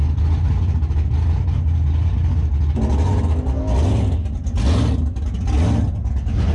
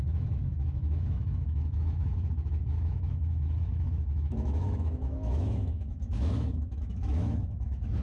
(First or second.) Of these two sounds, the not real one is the second